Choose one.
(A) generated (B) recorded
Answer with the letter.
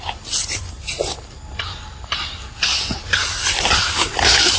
B